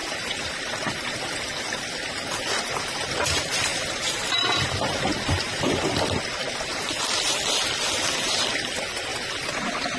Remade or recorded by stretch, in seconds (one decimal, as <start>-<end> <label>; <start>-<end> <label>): 0.0-10.0 recorded